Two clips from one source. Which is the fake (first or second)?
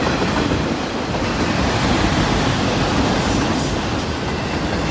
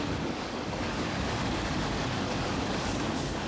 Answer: second